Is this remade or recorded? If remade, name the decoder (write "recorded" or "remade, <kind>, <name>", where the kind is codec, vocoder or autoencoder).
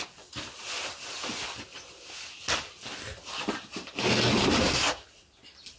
recorded